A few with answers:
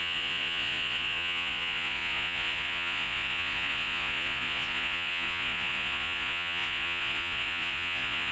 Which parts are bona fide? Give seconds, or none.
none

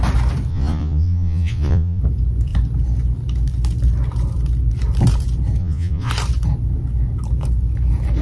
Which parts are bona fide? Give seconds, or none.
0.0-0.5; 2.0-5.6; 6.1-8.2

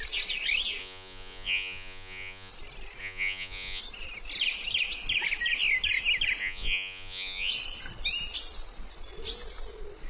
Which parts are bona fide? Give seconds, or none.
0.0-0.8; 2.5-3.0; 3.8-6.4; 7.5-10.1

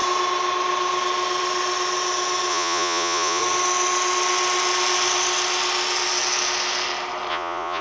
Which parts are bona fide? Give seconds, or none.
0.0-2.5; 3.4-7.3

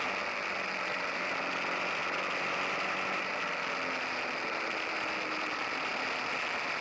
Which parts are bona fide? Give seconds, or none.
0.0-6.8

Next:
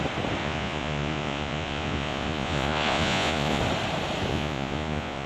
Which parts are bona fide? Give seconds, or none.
0.0-0.4; 3.6-4.3

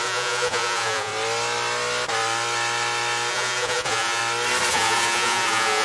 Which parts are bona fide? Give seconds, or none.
1.1-3.3; 4.2-4.7